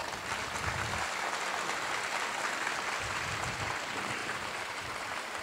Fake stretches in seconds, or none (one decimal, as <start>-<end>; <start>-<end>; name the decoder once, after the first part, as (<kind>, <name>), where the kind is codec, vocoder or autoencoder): 4.2-5.4 (vocoder, BigVGAN v2)